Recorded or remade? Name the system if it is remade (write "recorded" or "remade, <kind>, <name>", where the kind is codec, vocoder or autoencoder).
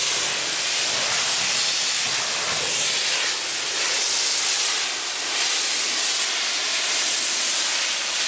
recorded